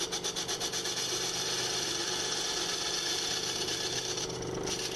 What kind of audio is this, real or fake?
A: fake